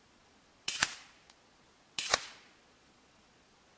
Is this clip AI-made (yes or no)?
yes